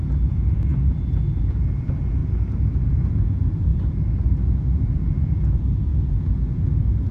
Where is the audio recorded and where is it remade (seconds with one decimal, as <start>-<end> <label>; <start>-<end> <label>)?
0.0-3.7 remade; 3.7-4.4 recorded; 4.4-7.1 remade